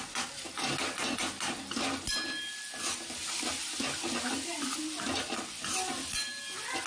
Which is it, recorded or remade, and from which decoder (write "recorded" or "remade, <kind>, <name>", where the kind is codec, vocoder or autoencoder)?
recorded